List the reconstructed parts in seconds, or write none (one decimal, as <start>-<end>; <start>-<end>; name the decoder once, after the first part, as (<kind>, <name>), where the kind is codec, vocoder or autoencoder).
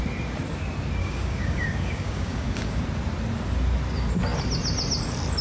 1.0-2.8 (codec, DAC)